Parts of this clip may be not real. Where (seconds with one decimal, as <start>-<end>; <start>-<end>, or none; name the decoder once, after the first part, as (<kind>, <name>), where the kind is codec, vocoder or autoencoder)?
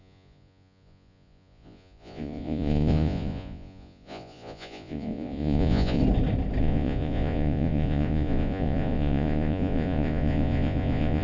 0.0-6.0 (vocoder, Vocos); 6.6-11.2